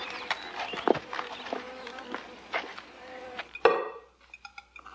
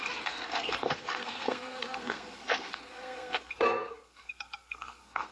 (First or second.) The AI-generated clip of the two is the second